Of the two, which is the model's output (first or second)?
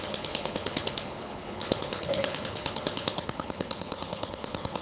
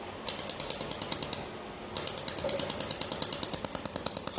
first